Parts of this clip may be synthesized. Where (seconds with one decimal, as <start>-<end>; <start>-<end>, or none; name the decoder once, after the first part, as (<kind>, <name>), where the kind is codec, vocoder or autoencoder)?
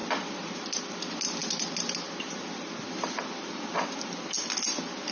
none